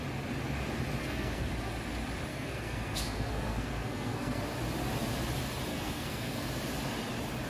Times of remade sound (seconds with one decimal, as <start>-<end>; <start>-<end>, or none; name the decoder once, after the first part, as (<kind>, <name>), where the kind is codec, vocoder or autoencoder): 1.0-1.5 (codec, SNAC); 2.3-4.4; 5.7-6.5